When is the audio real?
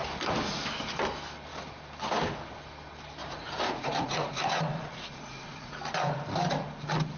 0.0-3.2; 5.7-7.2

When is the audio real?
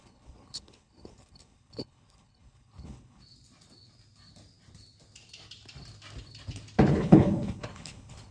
3.2-6.9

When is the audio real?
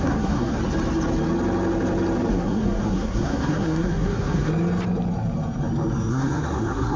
0.6-2.3; 4.5-6.1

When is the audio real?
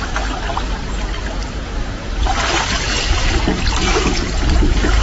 0.0-0.5; 3.4-5.0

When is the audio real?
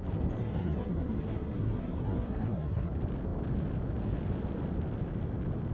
0.0-0.4; 2.9-5.7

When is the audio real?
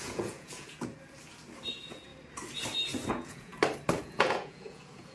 0.9-1.7; 2.1-3.1; 3.5-4.0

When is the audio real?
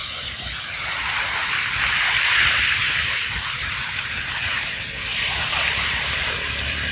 0.0-5.1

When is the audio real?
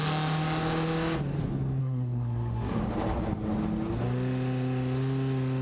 0.0-1.8; 2.8-5.6